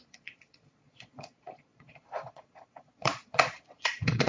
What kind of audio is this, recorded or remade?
remade